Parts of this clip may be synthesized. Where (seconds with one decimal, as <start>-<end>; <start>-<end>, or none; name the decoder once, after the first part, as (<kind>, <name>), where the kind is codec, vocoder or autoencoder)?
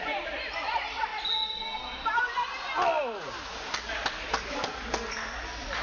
none